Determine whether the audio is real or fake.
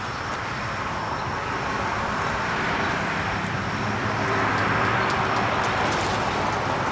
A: fake